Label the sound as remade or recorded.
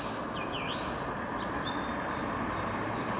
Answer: recorded